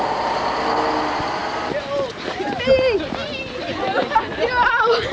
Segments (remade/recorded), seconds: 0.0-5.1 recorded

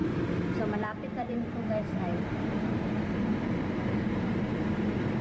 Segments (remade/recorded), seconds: 0.0-0.5 recorded; 0.5-5.2 remade

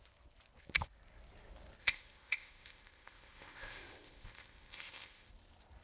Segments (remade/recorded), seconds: 0.0-1.8 recorded; 1.8-5.3 remade; 5.3-5.8 recorded

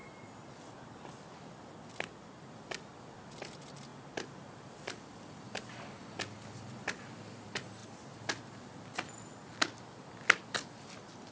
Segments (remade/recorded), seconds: 0.0-0.6 remade; 0.6-11.3 recorded

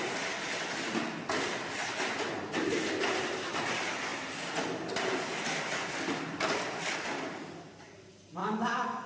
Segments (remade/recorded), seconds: 0.0-8.4 recorded; 8.4-9.1 remade

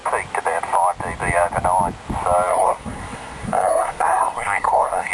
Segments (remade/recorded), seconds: 0.0-2.5 recorded; 2.5-5.1 remade